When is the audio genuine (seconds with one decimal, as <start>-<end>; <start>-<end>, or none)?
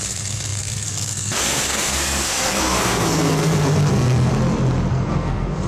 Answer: 4.3-4.9